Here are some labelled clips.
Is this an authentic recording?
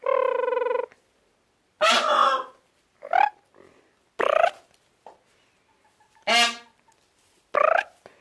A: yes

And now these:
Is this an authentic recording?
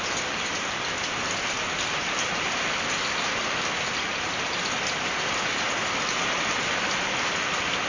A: yes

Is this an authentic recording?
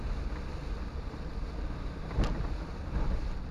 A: yes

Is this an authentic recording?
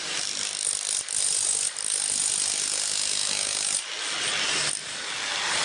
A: yes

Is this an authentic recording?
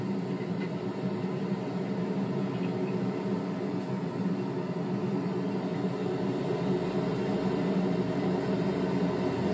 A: yes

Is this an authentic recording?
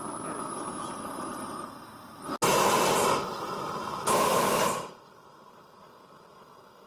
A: yes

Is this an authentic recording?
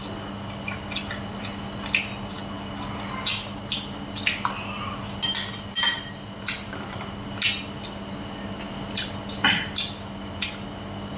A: yes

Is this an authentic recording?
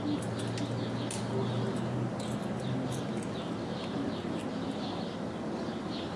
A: yes